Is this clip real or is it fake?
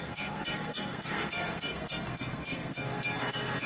fake